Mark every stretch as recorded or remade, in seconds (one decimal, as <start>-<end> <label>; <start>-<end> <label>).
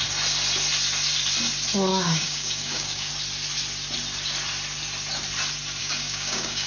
0.0-1.9 recorded; 1.9-3.1 remade; 3.1-5.8 recorded; 5.8-6.7 remade